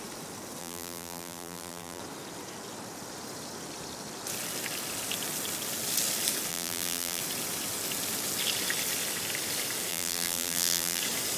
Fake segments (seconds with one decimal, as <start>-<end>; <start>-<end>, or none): 0.6-2.0; 6.5-7.2; 9.9-11.0